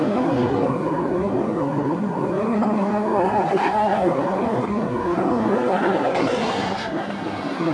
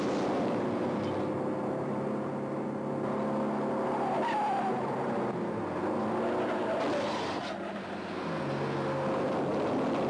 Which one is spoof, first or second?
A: first